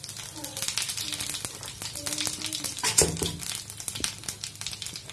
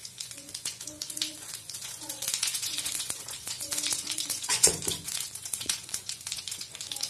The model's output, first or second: second